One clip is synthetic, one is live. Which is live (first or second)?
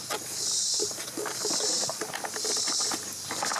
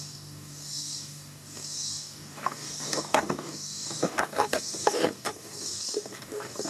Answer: first